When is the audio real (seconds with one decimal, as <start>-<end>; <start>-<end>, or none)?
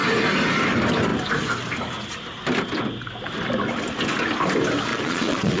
0.0-4.9